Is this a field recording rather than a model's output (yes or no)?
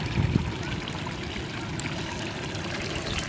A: no